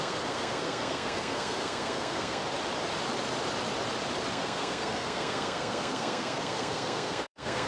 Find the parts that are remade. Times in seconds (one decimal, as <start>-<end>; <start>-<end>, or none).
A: 0.0-2.4; 4.3-7.7